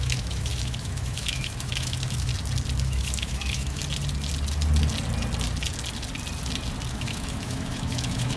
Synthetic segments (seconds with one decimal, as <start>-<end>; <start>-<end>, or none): 0.0-2.3; 2.8-3.8; 6.9-8.4